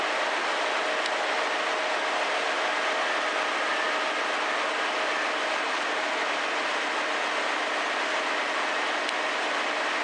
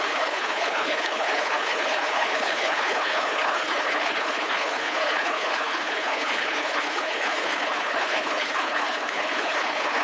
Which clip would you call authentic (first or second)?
first